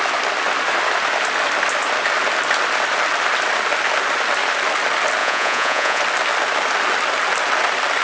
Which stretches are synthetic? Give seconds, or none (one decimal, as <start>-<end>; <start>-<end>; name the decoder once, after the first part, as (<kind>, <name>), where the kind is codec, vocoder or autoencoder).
5.2-6.0 (vocoder, Vocos)